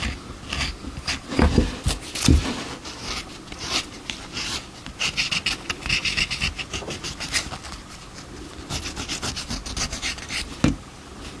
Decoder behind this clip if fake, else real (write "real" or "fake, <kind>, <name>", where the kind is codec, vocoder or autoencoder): real